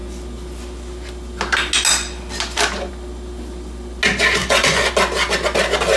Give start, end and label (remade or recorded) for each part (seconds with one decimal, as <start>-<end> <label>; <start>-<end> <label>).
0.0-4.4 recorded; 4.4-4.9 remade; 4.9-6.0 recorded